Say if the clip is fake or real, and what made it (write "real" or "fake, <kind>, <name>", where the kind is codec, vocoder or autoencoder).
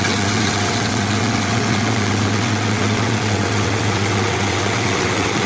fake, vocoder, WaveNeXt